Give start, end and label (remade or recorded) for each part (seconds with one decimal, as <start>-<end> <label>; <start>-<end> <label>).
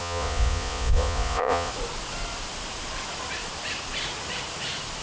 0.0-1.7 remade; 1.7-5.0 recorded